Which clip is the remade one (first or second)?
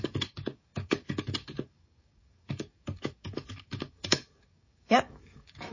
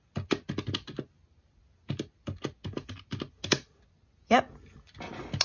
first